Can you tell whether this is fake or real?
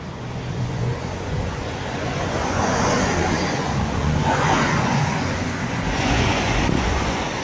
fake